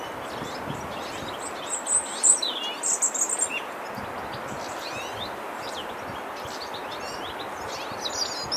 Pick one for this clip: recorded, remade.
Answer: recorded